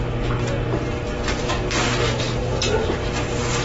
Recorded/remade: recorded